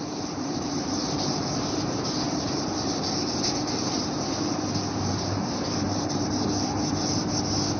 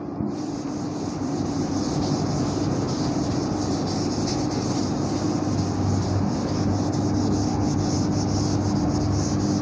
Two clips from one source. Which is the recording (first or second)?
second